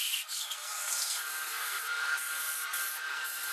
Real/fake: fake